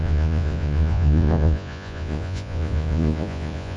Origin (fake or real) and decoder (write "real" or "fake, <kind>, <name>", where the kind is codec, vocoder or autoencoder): fake, vocoder, Vocos